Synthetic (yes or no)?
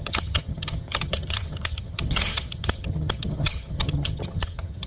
yes